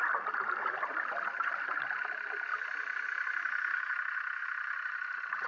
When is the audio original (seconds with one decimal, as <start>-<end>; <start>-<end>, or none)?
2.5-3.9; 4.4-5.5